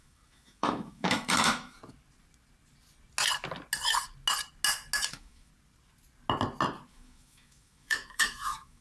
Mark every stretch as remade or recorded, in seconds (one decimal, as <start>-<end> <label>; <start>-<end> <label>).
0.0-1.8 remade; 1.8-5.1 recorded; 5.1-5.5 remade; 5.5-6.9 recorded; 6.9-8.8 remade